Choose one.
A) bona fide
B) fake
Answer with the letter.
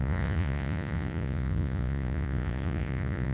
B